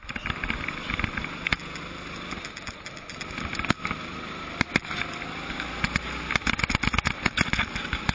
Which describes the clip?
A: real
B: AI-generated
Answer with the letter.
A